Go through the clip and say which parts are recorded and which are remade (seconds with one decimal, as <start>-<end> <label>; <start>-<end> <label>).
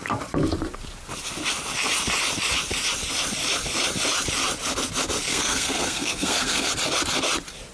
0.0-5.3 recorded; 5.3-6.7 remade; 6.7-7.7 recorded